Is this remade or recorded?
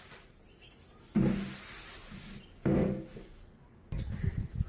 recorded